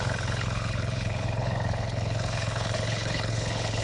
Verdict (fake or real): fake